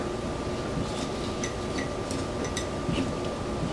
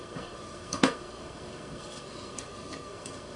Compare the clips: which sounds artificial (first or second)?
second